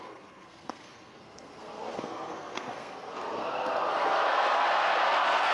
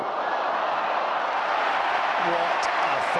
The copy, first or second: first